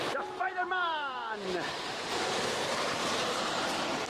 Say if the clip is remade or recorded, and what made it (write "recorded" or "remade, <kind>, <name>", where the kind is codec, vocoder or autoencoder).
remade, vocoder, BigVGAN v2